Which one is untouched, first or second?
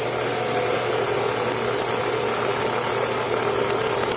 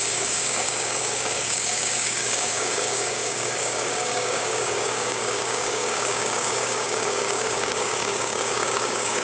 first